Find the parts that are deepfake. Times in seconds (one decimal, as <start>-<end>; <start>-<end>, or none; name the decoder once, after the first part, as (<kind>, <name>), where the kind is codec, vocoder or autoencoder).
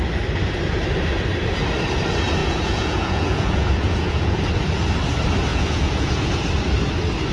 2.4-4.4 (vocoder, Vocos); 5.5-6.3